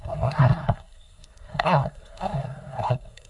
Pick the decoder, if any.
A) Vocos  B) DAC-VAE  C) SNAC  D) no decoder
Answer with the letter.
C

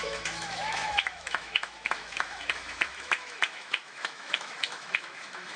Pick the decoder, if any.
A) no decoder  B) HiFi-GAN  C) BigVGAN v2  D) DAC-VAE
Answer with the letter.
D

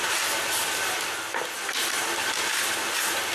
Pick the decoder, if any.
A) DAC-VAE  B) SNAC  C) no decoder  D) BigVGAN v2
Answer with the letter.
C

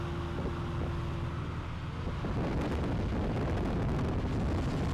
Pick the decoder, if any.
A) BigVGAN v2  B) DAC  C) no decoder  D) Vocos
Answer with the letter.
C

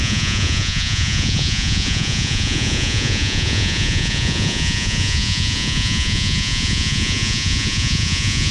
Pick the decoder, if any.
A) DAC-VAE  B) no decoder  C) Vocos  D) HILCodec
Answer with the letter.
C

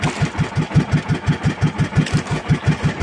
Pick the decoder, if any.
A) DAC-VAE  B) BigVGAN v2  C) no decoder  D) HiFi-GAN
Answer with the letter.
C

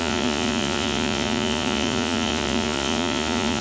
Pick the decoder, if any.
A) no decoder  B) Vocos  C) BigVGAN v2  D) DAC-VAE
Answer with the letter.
B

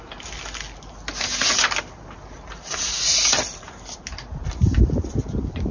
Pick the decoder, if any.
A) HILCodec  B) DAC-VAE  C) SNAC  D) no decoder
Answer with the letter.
D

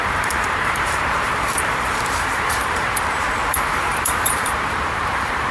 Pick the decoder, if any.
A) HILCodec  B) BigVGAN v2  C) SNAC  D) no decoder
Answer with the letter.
B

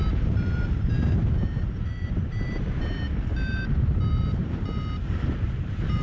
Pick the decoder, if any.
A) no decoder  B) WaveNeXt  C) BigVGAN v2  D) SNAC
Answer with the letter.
C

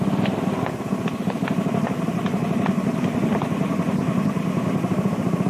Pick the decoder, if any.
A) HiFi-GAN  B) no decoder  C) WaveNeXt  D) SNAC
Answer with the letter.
B